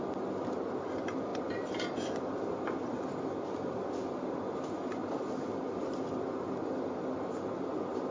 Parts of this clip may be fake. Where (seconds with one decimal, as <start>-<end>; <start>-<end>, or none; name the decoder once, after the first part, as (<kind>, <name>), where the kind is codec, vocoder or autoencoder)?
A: 1.3-3.9 (vocoder, BigVGAN v2); 5.0-5.6